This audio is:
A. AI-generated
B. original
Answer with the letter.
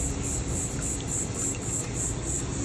B